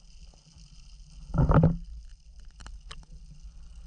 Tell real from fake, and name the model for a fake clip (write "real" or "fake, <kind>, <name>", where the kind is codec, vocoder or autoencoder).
real